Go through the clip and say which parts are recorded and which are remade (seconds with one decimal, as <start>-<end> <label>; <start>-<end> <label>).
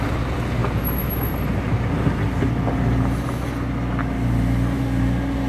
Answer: 0.0-5.5 recorded